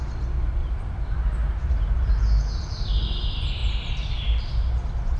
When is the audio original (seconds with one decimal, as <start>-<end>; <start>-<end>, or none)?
0.0-0.6; 2.2-5.2